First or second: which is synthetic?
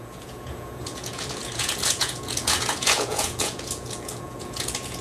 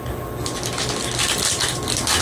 first